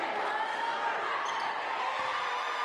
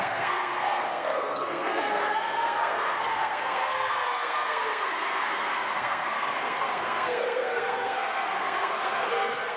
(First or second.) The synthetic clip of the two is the second